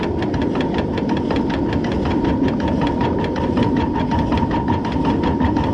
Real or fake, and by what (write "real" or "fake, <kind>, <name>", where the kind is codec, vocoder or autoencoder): real